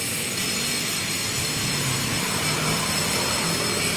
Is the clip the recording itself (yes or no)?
no